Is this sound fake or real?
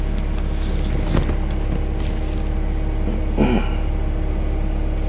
real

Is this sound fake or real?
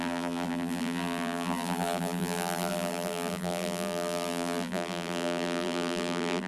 fake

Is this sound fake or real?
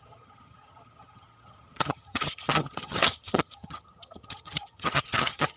fake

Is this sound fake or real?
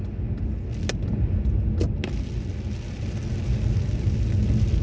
real